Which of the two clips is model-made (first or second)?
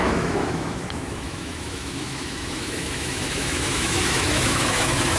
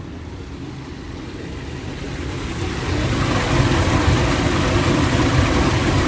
first